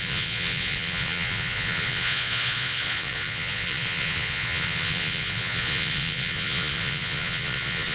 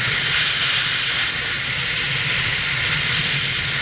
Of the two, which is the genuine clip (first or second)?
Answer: second